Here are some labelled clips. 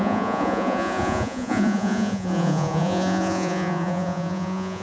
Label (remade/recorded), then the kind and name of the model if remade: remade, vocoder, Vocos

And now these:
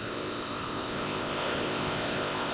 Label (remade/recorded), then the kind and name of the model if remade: remade, codec, ZipCodec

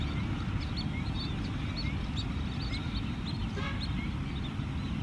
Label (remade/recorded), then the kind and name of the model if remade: recorded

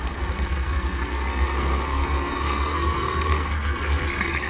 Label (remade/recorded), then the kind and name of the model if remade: remade, codec, SNAC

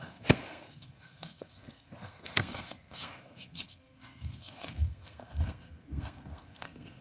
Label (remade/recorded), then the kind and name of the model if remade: remade, codec, SNAC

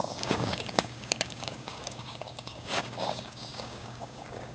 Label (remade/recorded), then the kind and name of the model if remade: remade, codec, DAC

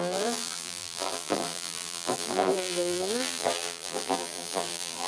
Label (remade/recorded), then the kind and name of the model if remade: remade, vocoder, BigVGAN v2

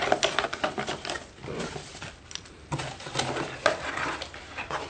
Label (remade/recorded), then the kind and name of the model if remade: recorded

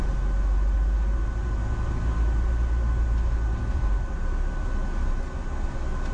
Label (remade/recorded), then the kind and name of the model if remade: recorded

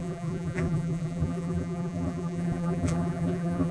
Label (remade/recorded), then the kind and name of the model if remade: remade, vocoder, BigVGAN v2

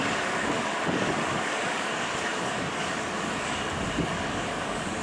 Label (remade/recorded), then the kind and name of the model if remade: remade, codec, DAC